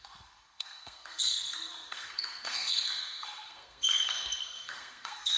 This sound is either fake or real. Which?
fake